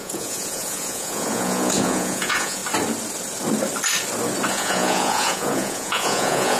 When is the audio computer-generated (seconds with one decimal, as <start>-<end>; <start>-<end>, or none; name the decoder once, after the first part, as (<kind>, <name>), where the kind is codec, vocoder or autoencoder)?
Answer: 0.0-2.6 (vocoder, Vocos); 4.5-6.6